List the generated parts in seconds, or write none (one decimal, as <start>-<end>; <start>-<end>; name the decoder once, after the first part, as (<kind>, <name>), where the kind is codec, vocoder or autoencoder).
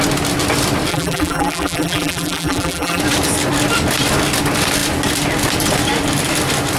0.9-3.0 (vocoder, BigVGAN v2)